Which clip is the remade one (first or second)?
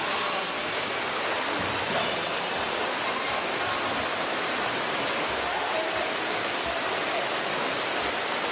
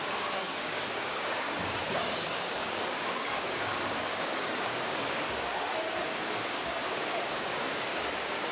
second